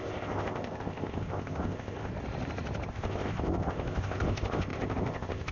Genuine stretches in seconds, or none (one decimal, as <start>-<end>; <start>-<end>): 2.1-2.9